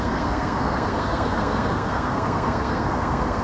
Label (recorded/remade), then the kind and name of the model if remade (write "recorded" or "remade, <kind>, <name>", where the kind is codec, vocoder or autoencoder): remade, codec, SNAC